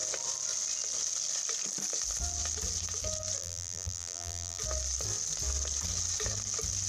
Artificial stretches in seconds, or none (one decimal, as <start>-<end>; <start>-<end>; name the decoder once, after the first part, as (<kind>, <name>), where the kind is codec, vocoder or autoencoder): 3.4-4.6 (vocoder, BigVGAN v2)